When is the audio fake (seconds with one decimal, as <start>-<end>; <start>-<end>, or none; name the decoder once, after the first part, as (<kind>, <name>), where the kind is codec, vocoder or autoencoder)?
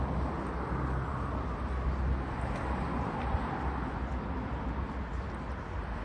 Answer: none